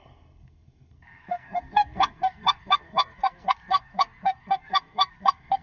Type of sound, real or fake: fake